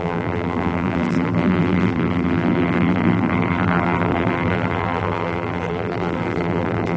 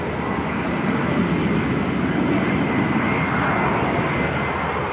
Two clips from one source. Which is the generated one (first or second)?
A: first